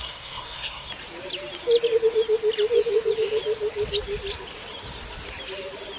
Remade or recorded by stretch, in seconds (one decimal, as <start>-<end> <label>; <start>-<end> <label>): 0.0-0.9 remade; 0.9-6.0 recorded